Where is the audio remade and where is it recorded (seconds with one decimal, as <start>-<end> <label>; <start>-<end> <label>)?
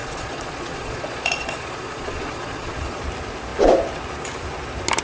0.0-3.0 remade; 3.0-5.0 recorded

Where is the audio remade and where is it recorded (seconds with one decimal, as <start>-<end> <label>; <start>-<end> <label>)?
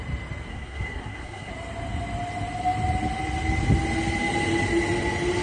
0.0-0.5 recorded; 0.5-1.5 remade; 1.5-5.4 recorded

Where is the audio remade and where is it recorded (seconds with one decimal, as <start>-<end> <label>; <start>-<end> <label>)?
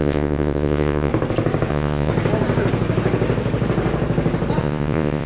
0.0-1.1 remade; 1.1-1.7 recorded; 1.7-2.1 remade; 2.1-4.6 recorded; 4.6-5.3 remade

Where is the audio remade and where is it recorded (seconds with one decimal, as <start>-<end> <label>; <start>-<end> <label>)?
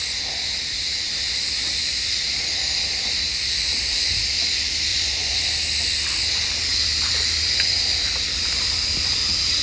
0.0-4.9 recorded; 4.9-5.4 remade; 5.4-9.6 recorded